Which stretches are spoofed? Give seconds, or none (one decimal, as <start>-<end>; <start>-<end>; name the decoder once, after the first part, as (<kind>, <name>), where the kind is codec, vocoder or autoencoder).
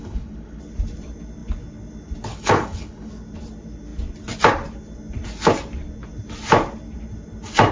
0.0-0.6 (codec, HILCodec); 2.3-3.1